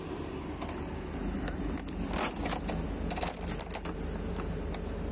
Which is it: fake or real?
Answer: real